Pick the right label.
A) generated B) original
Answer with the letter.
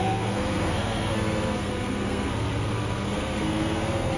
A